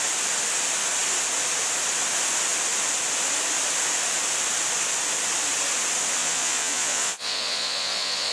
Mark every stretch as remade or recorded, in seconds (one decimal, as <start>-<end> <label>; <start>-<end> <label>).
0.0-6.2 recorded; 6.2-8.3 remade